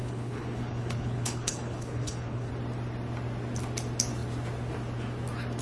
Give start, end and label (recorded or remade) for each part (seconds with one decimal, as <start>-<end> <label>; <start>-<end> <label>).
0.0-2.5 remade; 2.5-5.6 recorded